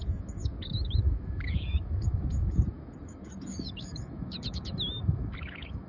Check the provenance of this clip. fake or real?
fake